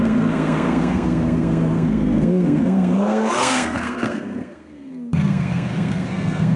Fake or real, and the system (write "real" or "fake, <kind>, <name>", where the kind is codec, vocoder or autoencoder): fake, codec, SNAC